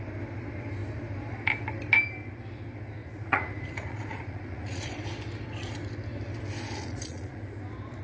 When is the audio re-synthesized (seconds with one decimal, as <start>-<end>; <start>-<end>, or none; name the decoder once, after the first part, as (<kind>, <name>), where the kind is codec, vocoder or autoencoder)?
3.0-4.9 (vocoder, Vocos); 6.8-7.4